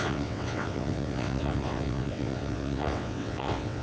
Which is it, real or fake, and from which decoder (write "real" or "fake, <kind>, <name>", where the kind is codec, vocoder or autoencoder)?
fake, vocoder, WaveNeXt